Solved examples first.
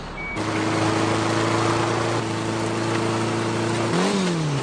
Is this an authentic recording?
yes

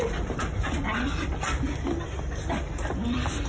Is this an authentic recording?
no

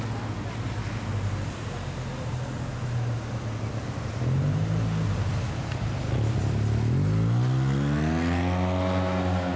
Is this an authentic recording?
yes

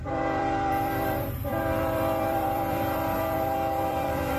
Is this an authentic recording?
no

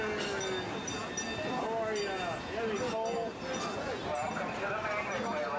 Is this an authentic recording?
yes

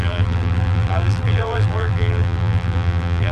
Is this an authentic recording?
no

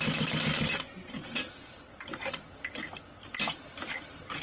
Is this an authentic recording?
yes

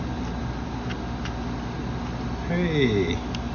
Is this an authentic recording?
yes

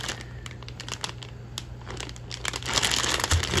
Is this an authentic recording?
yes